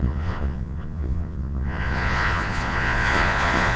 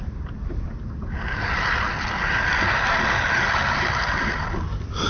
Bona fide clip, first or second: second